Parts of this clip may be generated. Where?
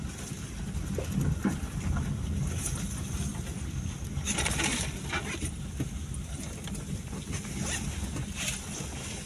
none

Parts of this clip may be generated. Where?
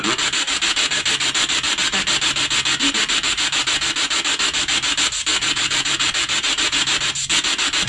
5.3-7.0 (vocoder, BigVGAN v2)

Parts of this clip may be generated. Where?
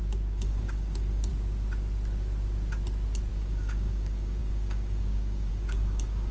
0.0-1.3 (codec, DAC); 3.3-6.3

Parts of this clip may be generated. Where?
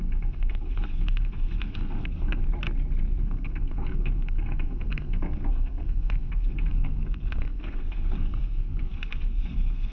0.0-2.4 (codec, SNAC); 3.2-9.9